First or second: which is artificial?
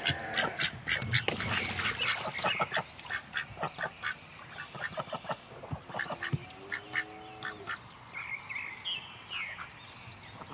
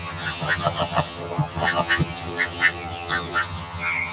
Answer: second